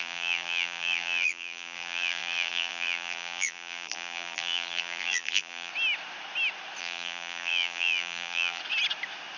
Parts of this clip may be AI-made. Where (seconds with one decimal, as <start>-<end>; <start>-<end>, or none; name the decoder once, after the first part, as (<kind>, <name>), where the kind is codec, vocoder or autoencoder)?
0.0-5.7 (vocoder, BigVGAN v2); 6.8-8.6